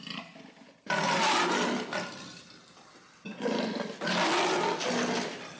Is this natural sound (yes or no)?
yes